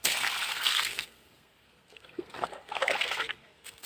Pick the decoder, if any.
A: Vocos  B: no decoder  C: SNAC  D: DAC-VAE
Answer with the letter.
C